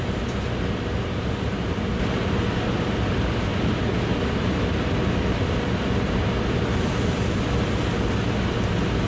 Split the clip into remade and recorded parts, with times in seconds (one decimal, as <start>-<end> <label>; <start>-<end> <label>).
0.0-3.5 recorded; 3.5-7.5 remade; 7.5-9.1 recorded